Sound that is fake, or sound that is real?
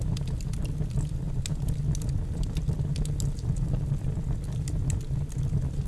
real